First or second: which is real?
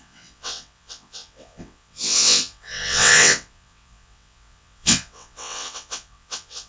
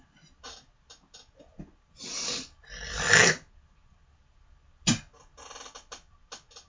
second